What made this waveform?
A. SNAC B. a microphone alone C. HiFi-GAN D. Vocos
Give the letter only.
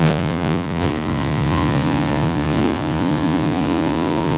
D